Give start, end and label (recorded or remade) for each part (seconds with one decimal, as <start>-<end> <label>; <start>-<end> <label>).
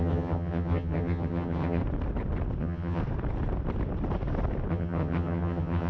0.0-1.8 remade; 1.8-2.6 recorded; 2.6-3.0 remade; 3.0-4.7 recorded; 4.7-5.9 remade